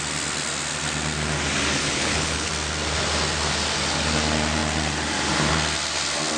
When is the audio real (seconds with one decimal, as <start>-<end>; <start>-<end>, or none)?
0.0-1.8; 2.5-6.4